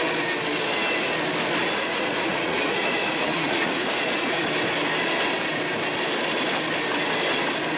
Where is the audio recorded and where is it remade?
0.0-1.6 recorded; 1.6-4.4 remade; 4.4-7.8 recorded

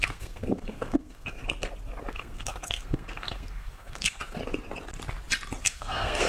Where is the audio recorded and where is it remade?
0.0-1.4 remade; 1.4-2.1 recorded; 2.1-4.4 remade; 4.4-5.6 recorded; 5.6-6.3 remade